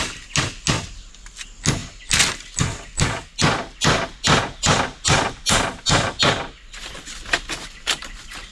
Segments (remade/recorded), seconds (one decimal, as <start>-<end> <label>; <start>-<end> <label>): 0.0-8.5 recorded